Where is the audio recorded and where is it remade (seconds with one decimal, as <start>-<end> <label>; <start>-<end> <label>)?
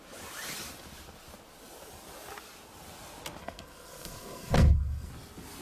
0.0-3.4 recorded; 3.4-5.1 remade; 5.1-5.6 recorded